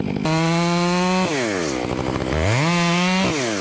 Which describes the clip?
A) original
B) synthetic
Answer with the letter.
A